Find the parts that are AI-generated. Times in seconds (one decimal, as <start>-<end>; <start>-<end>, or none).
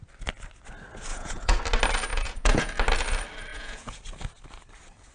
1.1-1.6; 2.1-2.7; 3.5-4.0